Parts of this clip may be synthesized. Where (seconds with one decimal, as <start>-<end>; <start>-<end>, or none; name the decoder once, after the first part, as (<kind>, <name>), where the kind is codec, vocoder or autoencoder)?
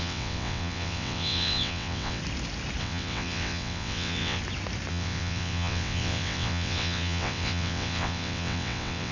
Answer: 0.0-2.2 (vocoder, WaveNeXt); 2.8-4.4; 4.9-9.1